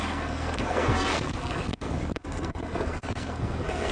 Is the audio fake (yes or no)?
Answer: yes